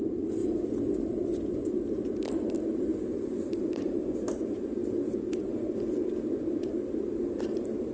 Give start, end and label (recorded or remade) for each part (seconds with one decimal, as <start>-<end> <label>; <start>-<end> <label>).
0.0-2.9 recorded; 2.9-4.0 remade; 4.0-7.9 recorded

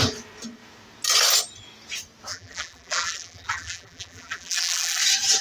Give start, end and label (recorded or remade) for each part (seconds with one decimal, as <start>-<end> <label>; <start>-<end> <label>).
0.0-2.3 recorded; 2.3-5.0 remade; 5.0-5.4 recorded

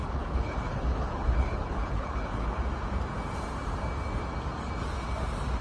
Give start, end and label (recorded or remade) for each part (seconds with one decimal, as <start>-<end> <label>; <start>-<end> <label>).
0.0-2.6 remade; 2.6-5.6 recorded

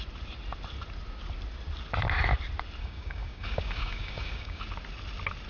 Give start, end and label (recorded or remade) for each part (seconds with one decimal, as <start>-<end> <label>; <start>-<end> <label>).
0.0-2.8 recorded; 2.8-4.6 remade; 4.6-5.5 recorded

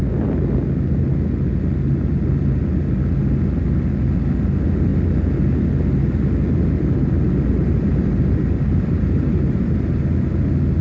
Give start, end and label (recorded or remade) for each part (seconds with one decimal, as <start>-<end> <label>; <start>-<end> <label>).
0.0-7.6 recorded; 7.6-10.1 remade; 10.1-10.8 recorded

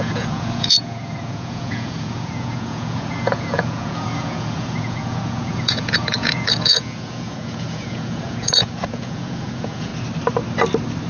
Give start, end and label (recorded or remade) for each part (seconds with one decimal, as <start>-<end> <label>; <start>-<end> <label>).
0.0-9.9 remade; 9.9-11.1 recorded